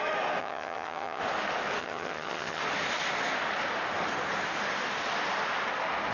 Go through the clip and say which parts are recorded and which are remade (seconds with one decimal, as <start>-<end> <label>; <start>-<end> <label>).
0.0-0.4 recorded; 0.4-1.2 remade; 1.2-1.8 recorded; 1.8-2.6 remade; 2.6-6.1 recorded